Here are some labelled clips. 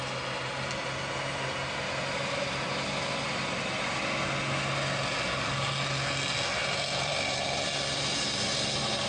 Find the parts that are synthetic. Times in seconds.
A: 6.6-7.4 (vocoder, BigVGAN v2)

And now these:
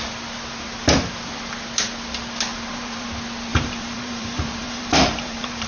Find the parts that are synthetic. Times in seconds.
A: 2.5-3.1 (vocoder, BigVGAN v2); 3.5-5.7

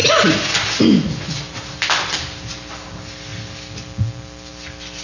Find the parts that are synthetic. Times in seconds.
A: none

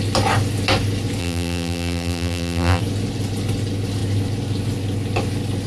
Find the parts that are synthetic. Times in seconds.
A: 1.2-2.8 (vocoder, BigVGAN v2)

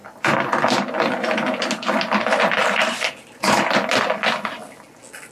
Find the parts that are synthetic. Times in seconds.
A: 0.0-0.9 (vocoder, BigVGAN v2); 2.6-3.9

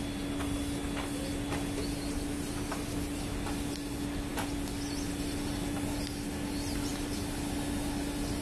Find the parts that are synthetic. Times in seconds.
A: none

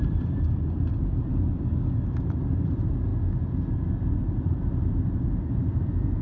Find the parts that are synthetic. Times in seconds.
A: 0.0-1.5 (vocoder, BigVGAN v2); 2.2-3.1; 4.2-6.2

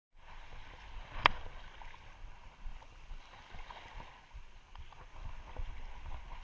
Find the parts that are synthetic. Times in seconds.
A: 2.7-4.1 (vocoder, BigVGAN v2); 5.1-5.7